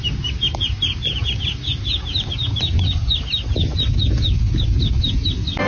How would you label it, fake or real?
real